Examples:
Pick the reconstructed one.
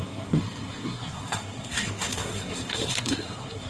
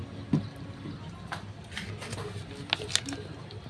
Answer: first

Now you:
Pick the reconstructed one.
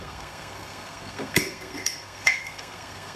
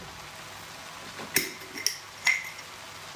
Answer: first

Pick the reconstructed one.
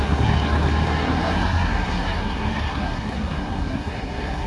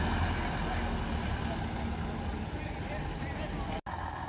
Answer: first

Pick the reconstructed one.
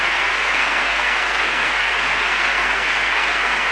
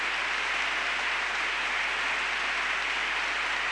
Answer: first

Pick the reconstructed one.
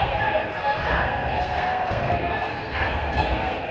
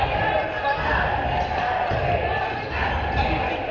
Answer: first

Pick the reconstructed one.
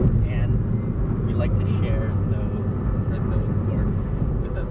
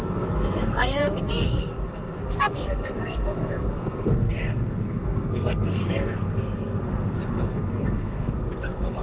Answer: second